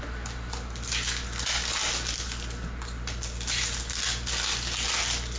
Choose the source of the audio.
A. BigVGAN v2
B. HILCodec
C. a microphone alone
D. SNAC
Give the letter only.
C